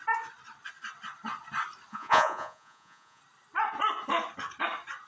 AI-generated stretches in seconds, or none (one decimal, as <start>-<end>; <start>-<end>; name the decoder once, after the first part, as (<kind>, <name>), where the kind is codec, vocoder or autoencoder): 1.9-3.2 (vocoder, Vocos)